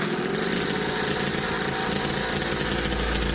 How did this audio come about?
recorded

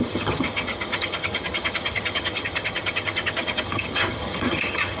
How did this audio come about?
remade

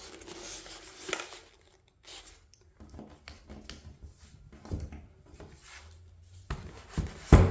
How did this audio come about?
recorded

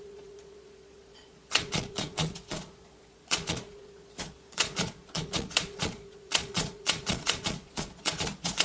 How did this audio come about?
remade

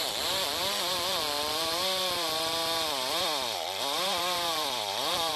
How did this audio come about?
remade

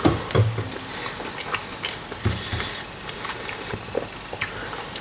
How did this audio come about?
recorded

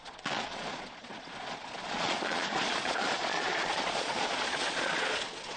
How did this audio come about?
remade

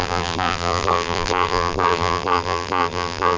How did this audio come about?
remade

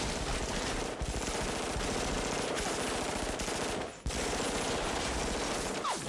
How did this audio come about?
recorded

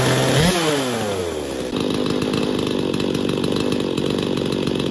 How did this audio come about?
recorded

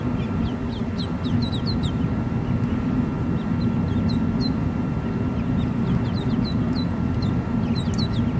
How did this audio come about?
recorded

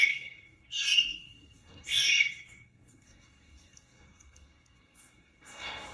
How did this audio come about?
remade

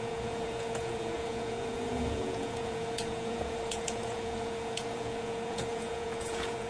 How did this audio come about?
remade